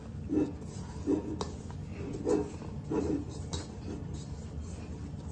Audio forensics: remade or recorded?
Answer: recorded